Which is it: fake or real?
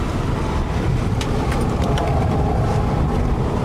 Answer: fake